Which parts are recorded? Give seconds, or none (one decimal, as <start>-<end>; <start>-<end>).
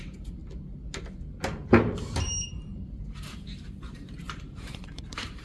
0.4-2.5